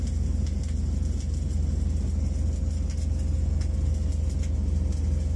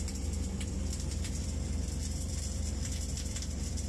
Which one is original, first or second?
first